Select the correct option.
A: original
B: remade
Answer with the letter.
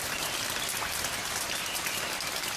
A